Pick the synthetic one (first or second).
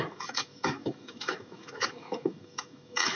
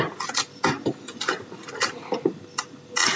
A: first